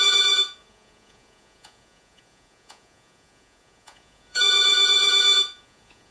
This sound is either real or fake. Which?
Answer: fake